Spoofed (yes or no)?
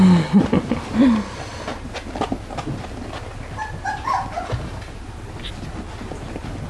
no